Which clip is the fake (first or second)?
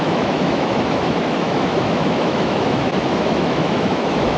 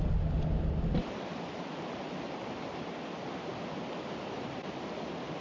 first